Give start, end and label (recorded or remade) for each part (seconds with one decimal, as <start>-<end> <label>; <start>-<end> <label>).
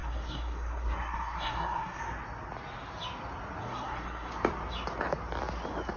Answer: 0.0-2.0 remade; 2.0-3.6 recorded; 3.6-4.3 remade; 4.3-6.0 recorded